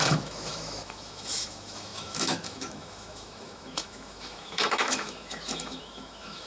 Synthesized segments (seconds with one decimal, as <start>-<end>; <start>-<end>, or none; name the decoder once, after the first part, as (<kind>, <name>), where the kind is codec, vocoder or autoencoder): 0.0-6.5 (autoencoder, DAC-VAE)